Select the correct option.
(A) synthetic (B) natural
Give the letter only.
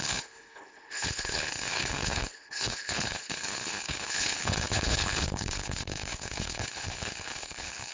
A